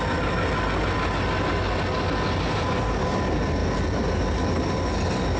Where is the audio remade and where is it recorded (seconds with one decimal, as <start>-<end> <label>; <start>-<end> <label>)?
0.0-5.4 recorded